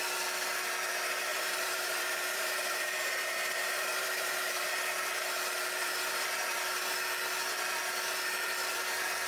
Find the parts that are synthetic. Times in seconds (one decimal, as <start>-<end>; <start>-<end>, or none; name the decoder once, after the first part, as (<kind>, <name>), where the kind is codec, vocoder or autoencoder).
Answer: 1.3-4.7 (vocoder, BigVGAN v2); 5.8-6.8